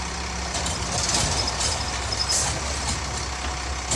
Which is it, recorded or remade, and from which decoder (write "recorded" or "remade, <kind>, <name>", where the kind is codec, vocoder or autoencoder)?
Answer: recorded